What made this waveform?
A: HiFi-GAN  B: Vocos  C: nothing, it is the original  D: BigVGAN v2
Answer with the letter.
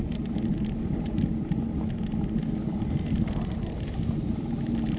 C